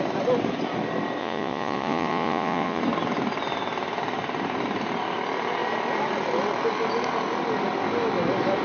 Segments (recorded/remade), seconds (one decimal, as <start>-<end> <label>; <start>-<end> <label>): 0.0-1.2 recorded; 1.2-2.8 remade; 2.8-8.6 recorded